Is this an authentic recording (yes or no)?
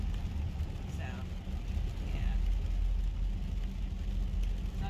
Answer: yes